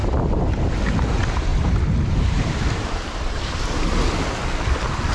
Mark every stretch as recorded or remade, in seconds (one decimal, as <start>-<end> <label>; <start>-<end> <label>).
0.0-0.8 remade; 0.8-1.5 recorded; 1.5-3.5 remade; 3.5-5.1 recorded